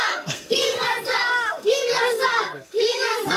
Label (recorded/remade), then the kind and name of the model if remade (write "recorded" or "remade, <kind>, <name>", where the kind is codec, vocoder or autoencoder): remade, codec, SNAC